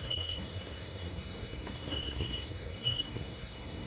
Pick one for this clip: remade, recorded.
remade